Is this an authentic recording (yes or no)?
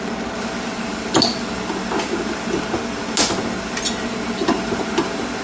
yes